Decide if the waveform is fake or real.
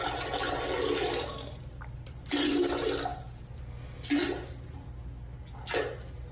real